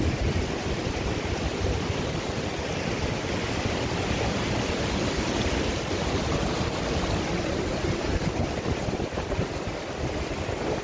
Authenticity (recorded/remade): recorded